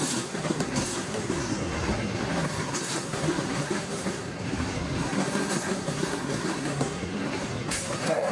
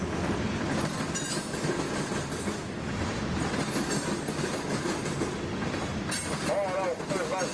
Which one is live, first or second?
second